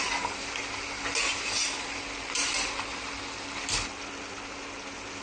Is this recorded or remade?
recorded